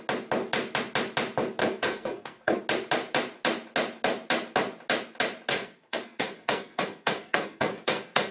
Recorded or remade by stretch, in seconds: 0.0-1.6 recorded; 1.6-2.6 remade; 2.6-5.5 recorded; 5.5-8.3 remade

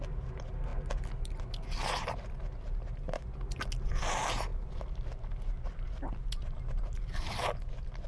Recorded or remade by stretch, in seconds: 0.0-8.1 recorded